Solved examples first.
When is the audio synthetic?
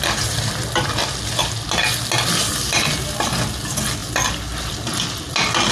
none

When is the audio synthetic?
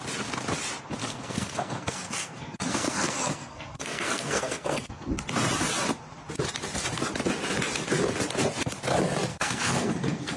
1.0-5.1 (codec, SNAC); 9.3-10.4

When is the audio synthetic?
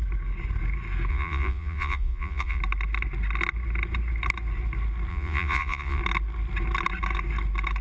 1.1-2.6 (vocoder, Vocos); 5.1-6.0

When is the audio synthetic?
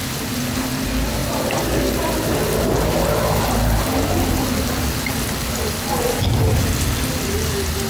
none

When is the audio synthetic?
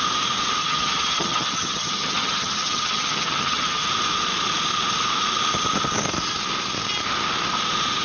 0.6-3.9 (vocoder, HiFi-GAN)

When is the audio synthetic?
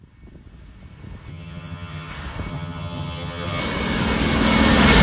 1.3-2.1 (vocoder, HiFi-GAN); 2.5-3.6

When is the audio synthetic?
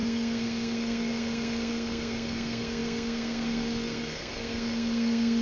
0.0-5.4 (codec, SNAC)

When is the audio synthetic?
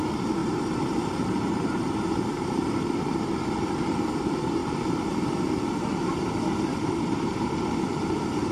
0.4-3.4 (vocoder, BigVGAN v2)